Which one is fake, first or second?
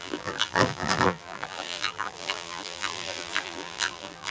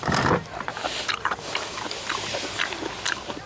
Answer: first